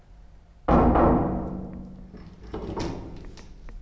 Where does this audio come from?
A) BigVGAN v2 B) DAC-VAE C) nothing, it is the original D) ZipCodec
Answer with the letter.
C